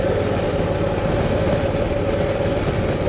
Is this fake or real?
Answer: real